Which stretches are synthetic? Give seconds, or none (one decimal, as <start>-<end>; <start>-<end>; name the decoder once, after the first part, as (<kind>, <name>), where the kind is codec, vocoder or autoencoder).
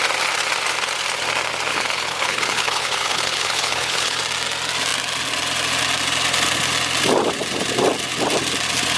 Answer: 1.7-4.2 (codec, HILCodec)